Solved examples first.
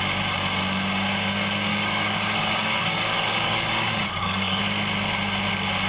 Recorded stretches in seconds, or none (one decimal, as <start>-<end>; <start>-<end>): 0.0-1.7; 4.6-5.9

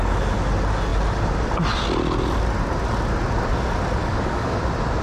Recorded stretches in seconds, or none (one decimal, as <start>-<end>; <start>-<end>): 0.0-4.0; 4.6-5.0

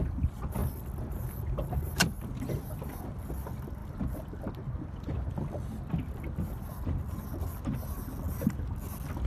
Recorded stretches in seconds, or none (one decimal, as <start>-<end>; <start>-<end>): 0.0-9.3

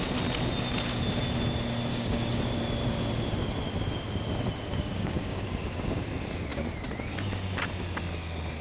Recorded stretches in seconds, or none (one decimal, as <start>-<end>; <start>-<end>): 0.0-1.9; 2.4-4.7; 5.4-8.6